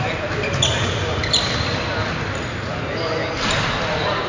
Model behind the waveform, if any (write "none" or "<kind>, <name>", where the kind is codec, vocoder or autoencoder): none